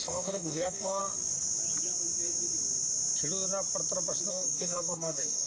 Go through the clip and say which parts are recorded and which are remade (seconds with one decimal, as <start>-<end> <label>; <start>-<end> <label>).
0.0-1.0 remade; 1.0-4.3 recorded; 4.3-5.5 remade